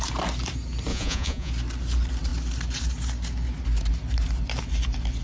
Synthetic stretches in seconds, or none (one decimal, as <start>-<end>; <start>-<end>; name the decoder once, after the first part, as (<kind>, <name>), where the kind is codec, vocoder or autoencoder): 0.9-1.5 (vocoder, Vocos)